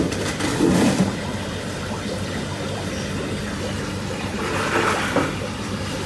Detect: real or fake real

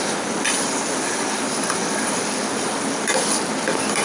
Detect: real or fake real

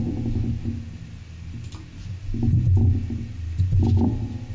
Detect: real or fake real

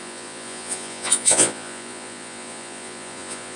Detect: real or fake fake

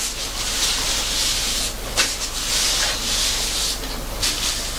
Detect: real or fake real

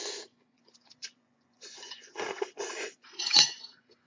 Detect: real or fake fake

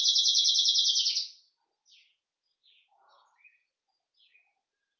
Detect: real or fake fake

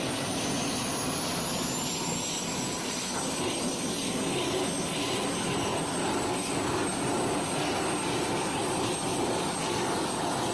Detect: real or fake real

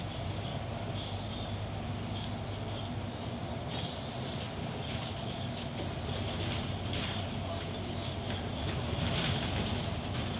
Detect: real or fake real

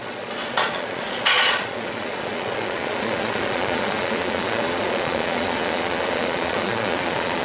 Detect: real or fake fake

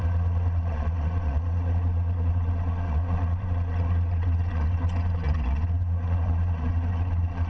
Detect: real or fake fake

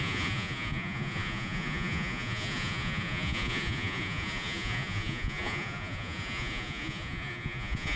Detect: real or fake fake